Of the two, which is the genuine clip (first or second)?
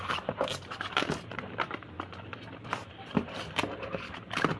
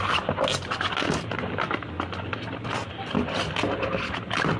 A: second